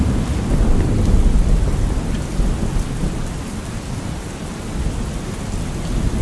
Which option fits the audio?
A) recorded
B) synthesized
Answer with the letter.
A